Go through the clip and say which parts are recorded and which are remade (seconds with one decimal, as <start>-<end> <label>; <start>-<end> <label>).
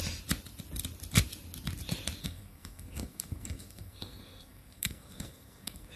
0.0-2.2 recorded; 2.2-6.0 remade